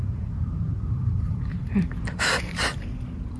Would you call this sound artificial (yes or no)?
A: yes